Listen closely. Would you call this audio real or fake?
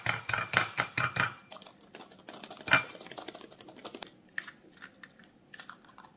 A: real